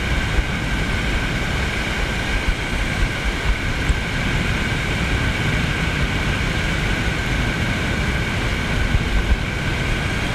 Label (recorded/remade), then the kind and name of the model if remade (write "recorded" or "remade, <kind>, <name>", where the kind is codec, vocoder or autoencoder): recorded